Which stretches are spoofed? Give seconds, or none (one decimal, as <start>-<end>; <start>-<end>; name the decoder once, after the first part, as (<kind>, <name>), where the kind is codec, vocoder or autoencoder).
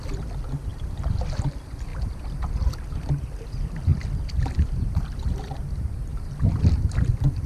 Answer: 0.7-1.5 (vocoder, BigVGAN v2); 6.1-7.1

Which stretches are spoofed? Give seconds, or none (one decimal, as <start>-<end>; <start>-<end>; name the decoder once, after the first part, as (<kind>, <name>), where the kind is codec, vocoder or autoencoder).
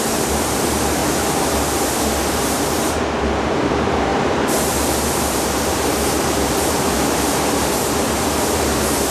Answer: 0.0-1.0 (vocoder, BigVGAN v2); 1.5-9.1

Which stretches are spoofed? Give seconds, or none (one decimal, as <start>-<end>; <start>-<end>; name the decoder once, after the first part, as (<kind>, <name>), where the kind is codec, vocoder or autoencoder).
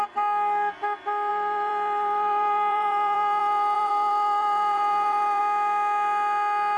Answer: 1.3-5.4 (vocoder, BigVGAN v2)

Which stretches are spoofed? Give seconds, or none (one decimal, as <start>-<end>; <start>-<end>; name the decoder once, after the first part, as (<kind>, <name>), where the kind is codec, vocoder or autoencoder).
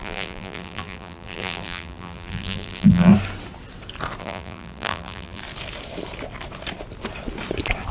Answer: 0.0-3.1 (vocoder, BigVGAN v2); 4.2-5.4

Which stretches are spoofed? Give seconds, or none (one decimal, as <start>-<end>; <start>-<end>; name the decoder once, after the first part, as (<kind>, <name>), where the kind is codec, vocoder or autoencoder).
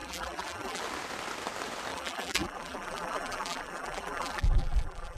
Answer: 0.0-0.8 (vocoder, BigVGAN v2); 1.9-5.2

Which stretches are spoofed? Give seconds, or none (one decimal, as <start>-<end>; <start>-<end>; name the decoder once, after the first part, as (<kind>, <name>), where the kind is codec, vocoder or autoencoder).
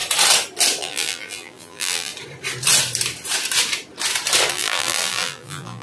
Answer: 0.8-2.1 (vocoder, BigVGAN v2); 4.5-5.8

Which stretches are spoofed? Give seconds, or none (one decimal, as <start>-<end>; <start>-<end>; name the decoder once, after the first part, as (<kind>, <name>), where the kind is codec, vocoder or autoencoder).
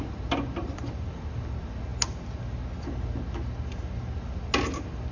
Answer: 0.6-1.2 (vocoder, BigVGAN v2)